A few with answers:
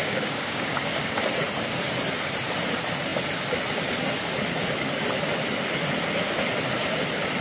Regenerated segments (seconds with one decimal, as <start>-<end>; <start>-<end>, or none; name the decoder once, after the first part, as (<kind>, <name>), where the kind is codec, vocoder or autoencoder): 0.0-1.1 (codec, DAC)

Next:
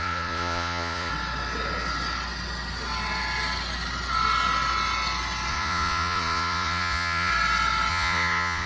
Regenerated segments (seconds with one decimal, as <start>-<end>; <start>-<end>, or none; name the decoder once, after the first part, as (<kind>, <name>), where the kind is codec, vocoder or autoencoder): 0.0-1.1 (vocoder, Vocos); 5.5-7.3; 7.9-8.7

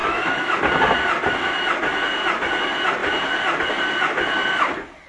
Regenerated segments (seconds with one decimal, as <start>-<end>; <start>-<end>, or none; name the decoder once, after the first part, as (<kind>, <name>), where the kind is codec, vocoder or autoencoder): 0.0-0.6 (autoencoder, DAC-VAE)

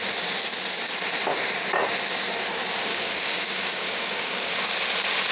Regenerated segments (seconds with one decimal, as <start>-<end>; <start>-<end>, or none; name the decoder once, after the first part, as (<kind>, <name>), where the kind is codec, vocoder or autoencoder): 2.9-4.5 (codec, DAC)